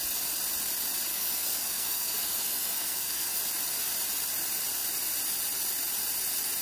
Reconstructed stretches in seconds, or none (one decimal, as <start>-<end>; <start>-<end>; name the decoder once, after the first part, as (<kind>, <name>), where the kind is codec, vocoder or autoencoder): 1.1-3.4 (codec, SNAC)